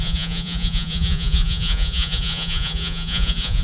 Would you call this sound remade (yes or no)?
yes